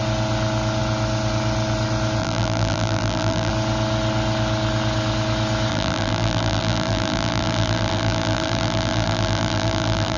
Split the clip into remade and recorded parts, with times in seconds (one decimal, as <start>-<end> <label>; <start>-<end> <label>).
0.0-2.2 recorded; 2.2-3.5 remade; 3.5-5.7 recorded; 5.7-10.2 remade